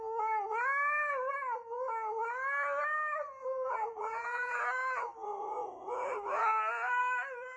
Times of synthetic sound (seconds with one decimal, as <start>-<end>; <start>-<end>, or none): 3.4-4.6